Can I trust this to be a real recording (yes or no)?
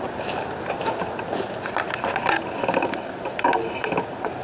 yes